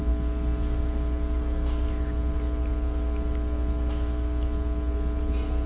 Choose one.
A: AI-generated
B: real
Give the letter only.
B